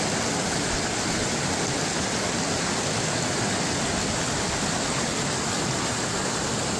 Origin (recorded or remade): recorded